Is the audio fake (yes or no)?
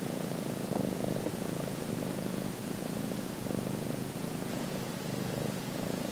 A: yes